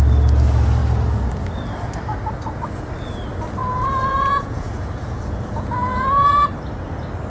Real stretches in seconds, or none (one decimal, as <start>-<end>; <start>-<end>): 0.0-3.6; 6.4-7.3